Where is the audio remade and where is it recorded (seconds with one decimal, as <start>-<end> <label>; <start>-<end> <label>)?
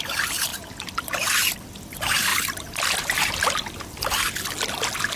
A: 0.0-0.5 recorded; 0.5-1.6 remade; 1.6-2.3 recorded; 2.3-3.6 remade; 3.6-5.2 recorded